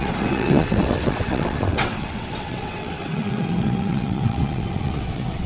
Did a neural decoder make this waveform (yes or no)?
yes